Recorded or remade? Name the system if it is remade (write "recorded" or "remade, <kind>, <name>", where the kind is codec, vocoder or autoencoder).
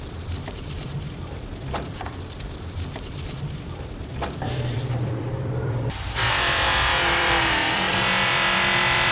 remade, vocoder, BigVGAN v2